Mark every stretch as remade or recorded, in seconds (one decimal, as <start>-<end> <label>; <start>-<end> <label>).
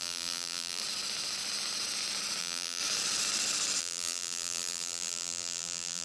0.0-0.8 remade; 0.8-2.4 recorded; 2.4-2.8 remade; 2.8-3.8 recorded; 3.8-6.0 remade